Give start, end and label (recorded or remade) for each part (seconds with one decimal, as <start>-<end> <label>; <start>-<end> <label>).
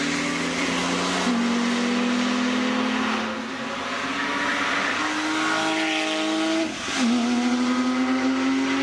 0.0-8.8 recorded